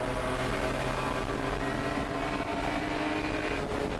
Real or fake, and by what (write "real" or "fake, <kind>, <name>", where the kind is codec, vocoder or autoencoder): real